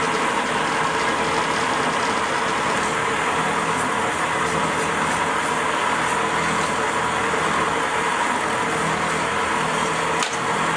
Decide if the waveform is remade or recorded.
recorded